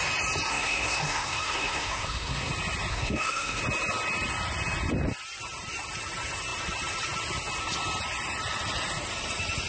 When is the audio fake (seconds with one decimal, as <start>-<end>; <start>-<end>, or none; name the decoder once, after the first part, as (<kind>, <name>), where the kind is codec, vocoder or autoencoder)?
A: 0.5-2.5 (codec, SNAC); 2.9-3.6